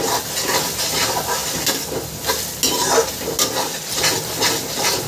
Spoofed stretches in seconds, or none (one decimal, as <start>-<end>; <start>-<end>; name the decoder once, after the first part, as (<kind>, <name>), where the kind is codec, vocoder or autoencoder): none